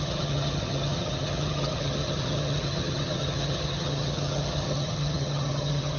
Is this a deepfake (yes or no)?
yes